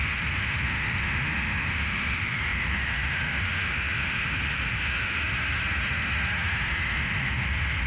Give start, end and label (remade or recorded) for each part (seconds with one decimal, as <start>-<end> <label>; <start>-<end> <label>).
0.0-5.2 remade; 5.2-6.7 recorded; 6.7-7.9 remade